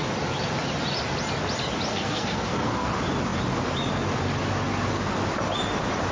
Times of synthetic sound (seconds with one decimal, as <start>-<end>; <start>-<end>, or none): 1.9-2.9